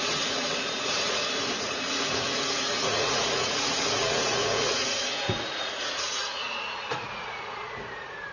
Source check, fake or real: fake